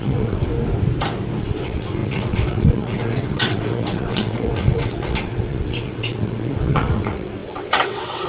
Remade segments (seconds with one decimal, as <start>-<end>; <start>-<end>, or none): 0.0-0.5; 1.4-8.3